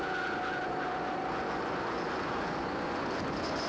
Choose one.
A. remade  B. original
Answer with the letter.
A